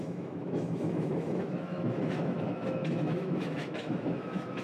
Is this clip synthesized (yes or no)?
yes